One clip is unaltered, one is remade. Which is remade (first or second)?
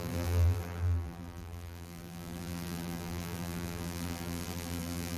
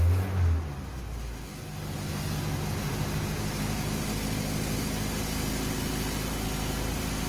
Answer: first